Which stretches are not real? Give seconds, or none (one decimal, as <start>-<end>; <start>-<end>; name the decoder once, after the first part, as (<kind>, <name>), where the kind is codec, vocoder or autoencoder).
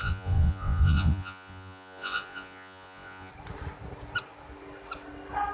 0.0-3.3 (vocoder, Vocos)